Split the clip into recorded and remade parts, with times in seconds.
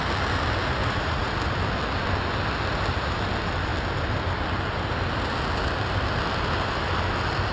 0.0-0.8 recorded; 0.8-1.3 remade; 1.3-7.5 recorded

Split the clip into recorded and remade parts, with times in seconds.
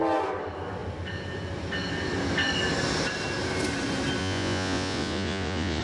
0.0-4.2 recorded; 4.2-5.8 remade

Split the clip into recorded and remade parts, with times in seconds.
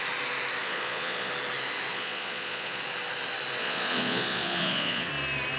0.0-0.6 recorded; 0.6-1.3 remade; 1.3-1.9 recorded; 1.9-2.8 remade; 2.8-3.6 recorded; 3.6-5.1 remade; 5.1-5.6 recorded